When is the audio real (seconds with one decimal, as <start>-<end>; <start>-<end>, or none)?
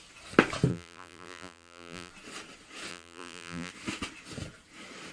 0.0-0.7; 2.1-2.9; 3.7-5.1